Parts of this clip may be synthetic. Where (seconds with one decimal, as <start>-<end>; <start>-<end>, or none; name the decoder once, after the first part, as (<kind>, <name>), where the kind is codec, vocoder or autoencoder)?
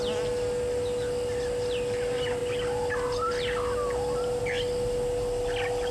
none